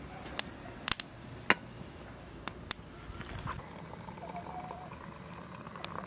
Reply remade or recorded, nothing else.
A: recorded